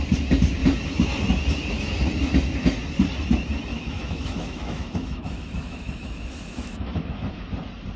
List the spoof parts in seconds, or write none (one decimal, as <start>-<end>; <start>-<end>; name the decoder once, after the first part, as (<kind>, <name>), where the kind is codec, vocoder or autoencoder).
3.7-7.1 (autoencoder, DAC-VAE)